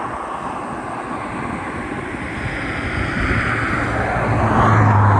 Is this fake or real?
real